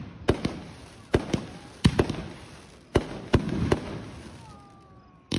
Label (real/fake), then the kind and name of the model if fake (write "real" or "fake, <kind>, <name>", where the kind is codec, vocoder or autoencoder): real